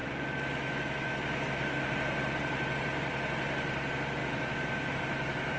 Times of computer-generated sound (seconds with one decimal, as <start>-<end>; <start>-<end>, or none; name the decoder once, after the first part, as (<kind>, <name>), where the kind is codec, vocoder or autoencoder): 0.0-1.8 (autoencoder, DAC-VAE); 4.2-5.6